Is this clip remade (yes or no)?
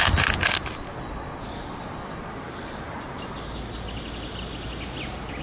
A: no